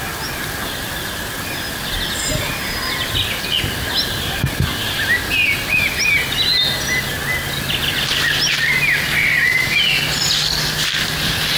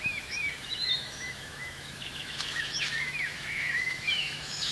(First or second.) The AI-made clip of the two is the second